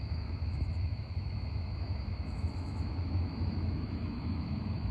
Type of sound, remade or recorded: remade